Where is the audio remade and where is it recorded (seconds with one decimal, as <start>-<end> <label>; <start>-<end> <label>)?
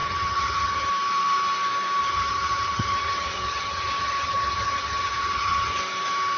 0.0-0.9 remade; 0.9-2.0 recorded; 2.0-5.8 remade; 5.8-6.4 recorded